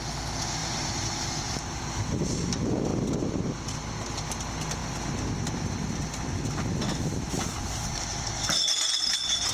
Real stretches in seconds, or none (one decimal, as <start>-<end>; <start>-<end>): 0.0-0.6; 1.8-9.5